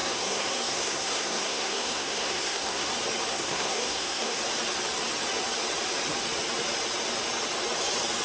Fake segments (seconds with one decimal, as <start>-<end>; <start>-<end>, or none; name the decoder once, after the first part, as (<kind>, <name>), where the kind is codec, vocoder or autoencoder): 0.0-2.9 (codec, SNAC); 3.3-4.4